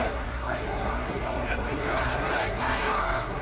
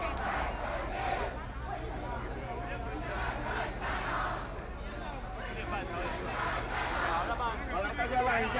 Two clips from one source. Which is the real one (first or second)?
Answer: second